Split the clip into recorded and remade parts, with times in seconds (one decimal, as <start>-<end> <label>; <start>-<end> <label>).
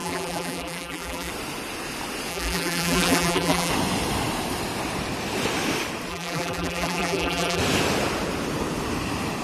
0.0-1.3 remade; 1.3-2.3 recorded; 2.3-3.7 remade; 3.7-6.1 recorded; 6.1-7.6 remade; 7.6-9.4 recorded